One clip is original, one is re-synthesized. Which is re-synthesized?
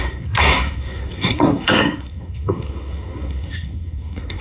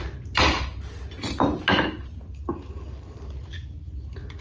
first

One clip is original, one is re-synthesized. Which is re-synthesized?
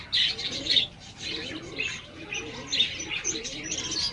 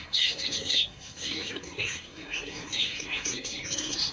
second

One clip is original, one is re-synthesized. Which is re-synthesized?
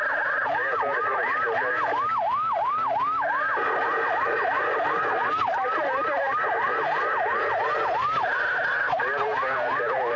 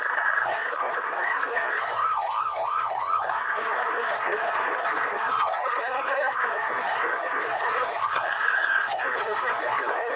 second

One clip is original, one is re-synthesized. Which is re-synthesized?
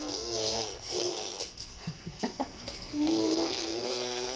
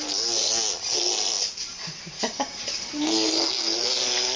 first